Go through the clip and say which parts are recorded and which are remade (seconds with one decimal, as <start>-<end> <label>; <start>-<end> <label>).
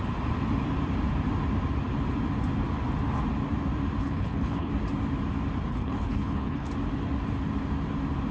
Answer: 0.0-4.0 recorded; 4.0-4.7 remade; 4.7-5.7 recorded; 5.7-6.7 remade; 6.7-8.3 recorded